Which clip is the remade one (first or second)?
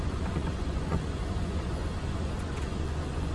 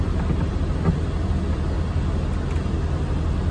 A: first